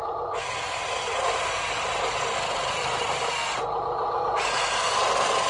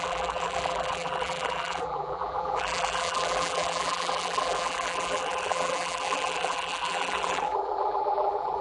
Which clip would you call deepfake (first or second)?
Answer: second